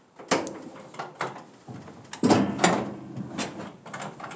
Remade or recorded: recorded